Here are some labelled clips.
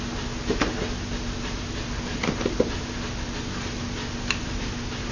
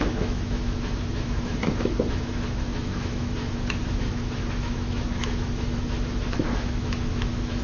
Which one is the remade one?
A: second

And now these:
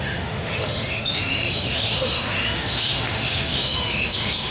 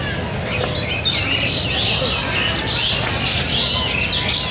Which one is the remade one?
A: first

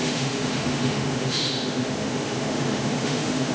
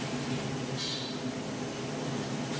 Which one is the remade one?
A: first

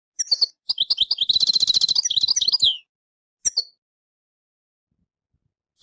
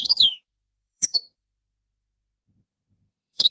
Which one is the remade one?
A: second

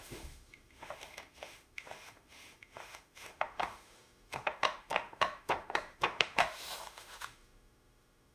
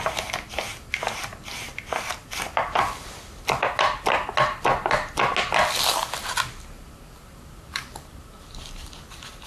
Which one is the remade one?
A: first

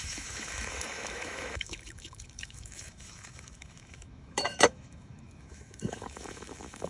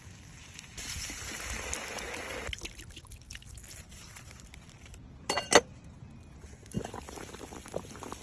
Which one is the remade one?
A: first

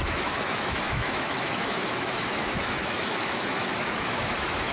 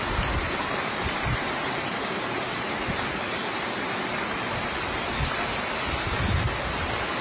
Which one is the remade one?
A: first